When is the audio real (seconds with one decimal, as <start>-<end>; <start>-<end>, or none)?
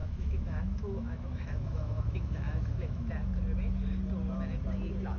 3.1-5.2